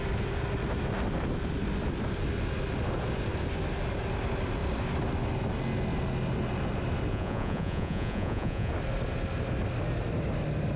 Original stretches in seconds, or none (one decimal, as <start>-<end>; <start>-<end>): 0.0-7.1; 8.7-10.8